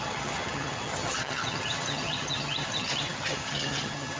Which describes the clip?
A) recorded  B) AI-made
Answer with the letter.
B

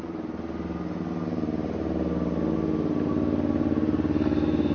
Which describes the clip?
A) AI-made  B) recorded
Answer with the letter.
B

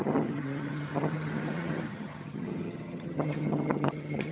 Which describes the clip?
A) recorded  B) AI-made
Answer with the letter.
B